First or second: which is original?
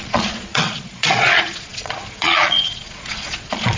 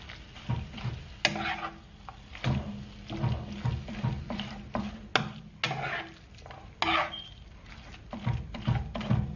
second